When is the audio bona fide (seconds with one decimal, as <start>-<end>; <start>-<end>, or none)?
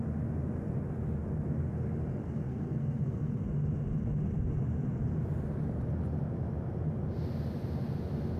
0.0-2.1; 3.4-8.4